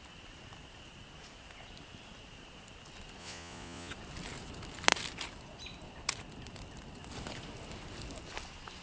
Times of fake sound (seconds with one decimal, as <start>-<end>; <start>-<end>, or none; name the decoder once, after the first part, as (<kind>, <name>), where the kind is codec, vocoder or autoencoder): 3.2-3.9 (vocoder, Vocos)

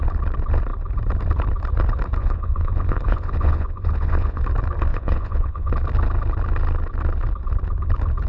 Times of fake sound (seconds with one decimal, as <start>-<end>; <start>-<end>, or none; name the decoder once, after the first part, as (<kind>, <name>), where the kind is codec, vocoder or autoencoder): 2.2-4.4 (vocoder, Vocos); 4.9-5.7

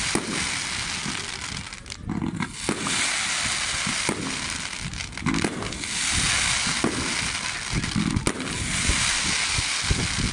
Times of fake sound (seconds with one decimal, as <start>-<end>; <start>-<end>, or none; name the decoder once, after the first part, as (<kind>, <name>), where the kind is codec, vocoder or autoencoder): none

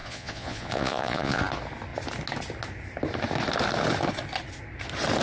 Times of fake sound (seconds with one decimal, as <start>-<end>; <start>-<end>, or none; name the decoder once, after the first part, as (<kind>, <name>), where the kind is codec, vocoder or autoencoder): 0.0-1.4 (vocoder, Vocos)